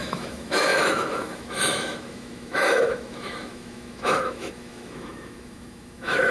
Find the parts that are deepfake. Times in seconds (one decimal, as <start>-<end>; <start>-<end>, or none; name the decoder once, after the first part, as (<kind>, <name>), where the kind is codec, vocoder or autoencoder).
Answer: 0.0-6.3 (autoencoder, DAC-VAE)